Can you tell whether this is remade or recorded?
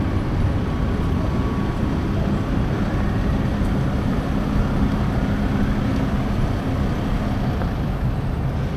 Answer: recorded